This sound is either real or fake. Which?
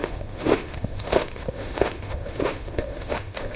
fake